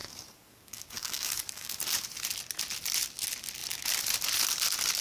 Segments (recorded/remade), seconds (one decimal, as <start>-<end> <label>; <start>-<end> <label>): 0.0-1.8 remade; 1.8-5.0 recorded